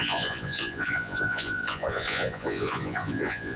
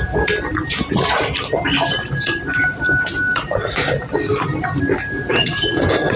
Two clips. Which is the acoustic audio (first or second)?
second